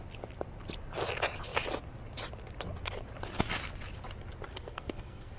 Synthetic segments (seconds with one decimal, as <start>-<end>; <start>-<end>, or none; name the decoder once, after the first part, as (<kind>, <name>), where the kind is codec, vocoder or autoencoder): 4.5-5.4 (codec, SNAC)